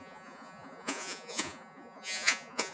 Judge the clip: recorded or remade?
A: remade